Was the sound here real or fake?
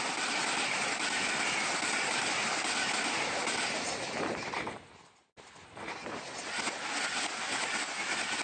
real